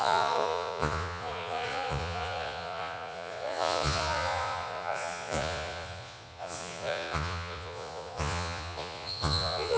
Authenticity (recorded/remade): remade